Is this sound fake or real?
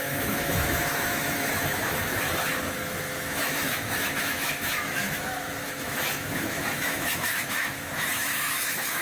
fake